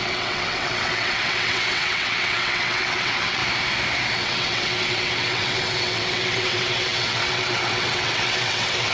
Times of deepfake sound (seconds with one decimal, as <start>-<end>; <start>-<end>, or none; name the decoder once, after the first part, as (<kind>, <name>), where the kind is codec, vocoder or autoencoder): 0.0-3.4 (vocoder, WaveNeXt); 4.1-8.9